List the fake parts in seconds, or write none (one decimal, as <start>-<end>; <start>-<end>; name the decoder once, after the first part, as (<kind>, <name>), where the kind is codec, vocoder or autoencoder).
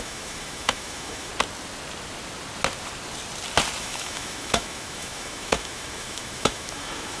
0.0-1.3 (autoencoder, DAC-VAE); 3.8-7.2